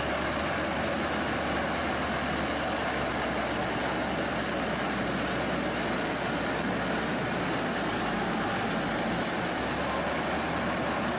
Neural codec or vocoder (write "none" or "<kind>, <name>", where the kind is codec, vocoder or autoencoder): none